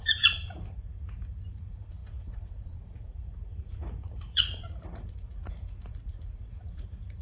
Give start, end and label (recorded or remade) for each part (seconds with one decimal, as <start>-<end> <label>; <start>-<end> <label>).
0.0-7.2 remade